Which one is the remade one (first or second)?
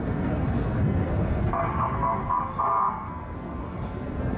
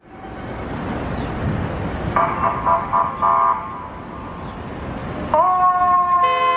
first